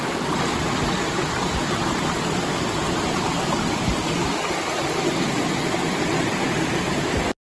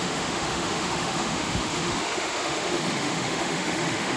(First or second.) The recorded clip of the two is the first